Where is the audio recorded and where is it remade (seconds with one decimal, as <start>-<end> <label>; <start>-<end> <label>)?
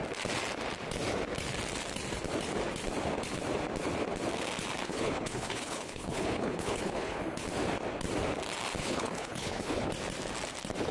0.0-4.8 recorded; 4.8-7.2 remade; 7.2-8.8 recorded; 8.8-9.9 remade; 9.9-10.9 recorded